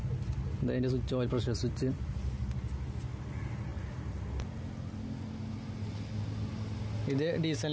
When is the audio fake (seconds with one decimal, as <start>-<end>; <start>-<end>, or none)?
1.6-2.1; 3.7-4.6